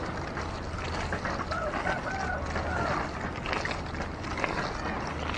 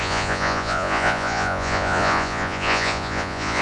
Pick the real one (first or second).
first